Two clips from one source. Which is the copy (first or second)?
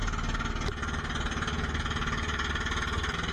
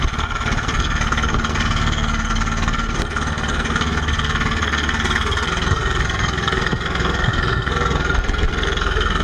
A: second